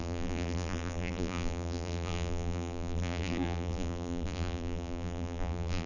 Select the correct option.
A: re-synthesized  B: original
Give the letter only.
A